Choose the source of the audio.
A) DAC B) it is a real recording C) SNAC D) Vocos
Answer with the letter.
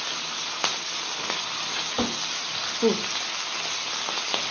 B